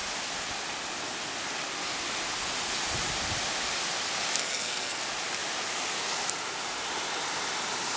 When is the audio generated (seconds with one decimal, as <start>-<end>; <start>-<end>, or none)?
4.4-5.0